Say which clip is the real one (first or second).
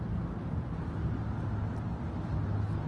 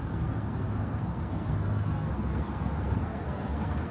first